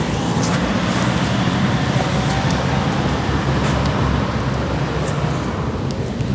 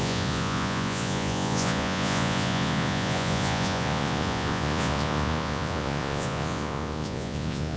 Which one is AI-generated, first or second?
second